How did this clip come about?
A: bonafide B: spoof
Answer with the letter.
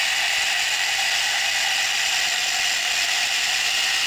A